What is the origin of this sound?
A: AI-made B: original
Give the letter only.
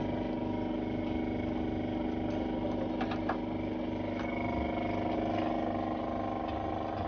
B